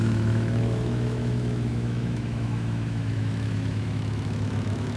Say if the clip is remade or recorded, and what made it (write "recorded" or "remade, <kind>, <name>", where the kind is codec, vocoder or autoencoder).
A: remade, autoencoder, DAC-VAE